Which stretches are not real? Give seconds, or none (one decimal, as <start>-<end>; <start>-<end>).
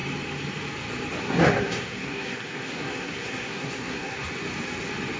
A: 1.2-4.3